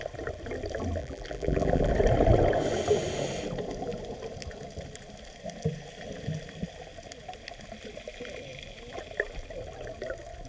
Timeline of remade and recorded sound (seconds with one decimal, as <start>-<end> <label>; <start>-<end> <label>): 0.0-1.0 recorded; 1.0-1.9 remade; 1.9-10.5 recorded